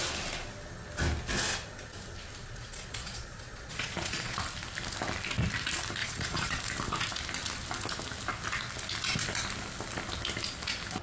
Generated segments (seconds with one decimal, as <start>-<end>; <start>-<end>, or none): 2.4-4.4; 6.0-6.6